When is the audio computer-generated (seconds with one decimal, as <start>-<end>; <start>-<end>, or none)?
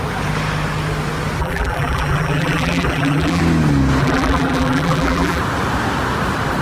1.4-3.4; 4.0-5.4